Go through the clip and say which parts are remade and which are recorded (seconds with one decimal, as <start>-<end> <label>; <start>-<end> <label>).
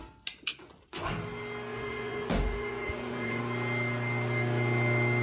0.0-0.5 recorded; 0.5-1.1 remade; 1.1-1.7 recorded; 1.7-3.4 remade; 3.4-5.2 recorded